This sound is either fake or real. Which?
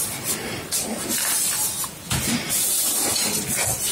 real